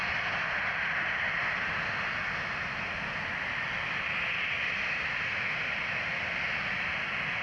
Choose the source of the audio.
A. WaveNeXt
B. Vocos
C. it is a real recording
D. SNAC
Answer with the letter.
C